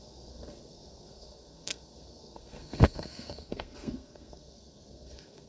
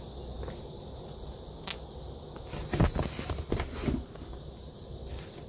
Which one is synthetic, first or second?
first